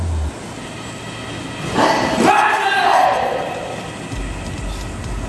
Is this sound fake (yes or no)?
no